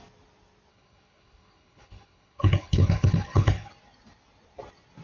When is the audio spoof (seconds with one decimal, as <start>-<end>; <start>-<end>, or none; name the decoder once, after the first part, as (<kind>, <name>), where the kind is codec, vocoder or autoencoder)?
0.7-3.7 (codec, HILCodec)